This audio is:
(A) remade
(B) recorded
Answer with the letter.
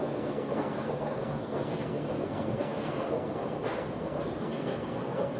A